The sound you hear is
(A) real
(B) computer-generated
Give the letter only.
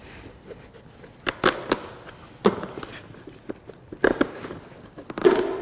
A